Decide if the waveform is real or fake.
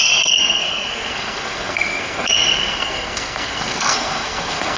fake